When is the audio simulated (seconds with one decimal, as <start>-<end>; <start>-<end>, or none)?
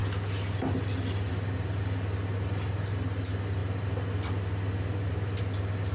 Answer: none